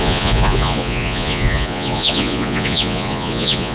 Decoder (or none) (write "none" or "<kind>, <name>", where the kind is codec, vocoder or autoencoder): vocoder, Vocos